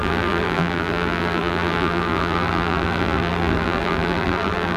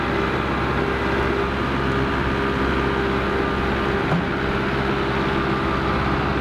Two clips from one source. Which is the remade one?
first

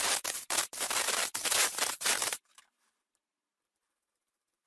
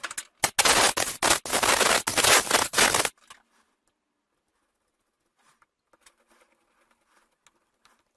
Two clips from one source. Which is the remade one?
first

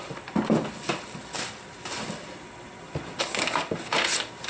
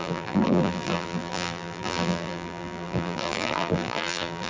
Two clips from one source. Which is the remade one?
second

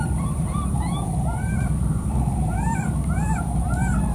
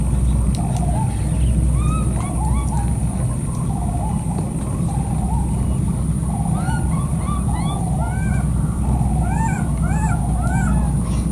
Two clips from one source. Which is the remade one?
first